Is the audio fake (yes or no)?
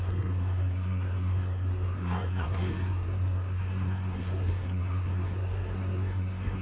yes